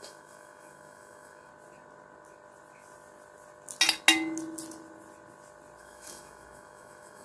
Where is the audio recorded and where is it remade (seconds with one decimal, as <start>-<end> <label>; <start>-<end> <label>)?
0.0-1.5 remade; 1.5-5.8 recorded; 5.8-7.2 remade